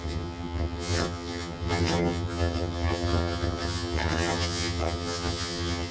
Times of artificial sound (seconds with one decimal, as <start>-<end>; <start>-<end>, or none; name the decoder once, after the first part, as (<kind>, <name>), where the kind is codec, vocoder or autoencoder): 0.0-5.9 (vocoder, HiFi-GAN)